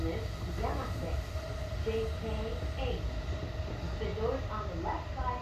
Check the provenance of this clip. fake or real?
real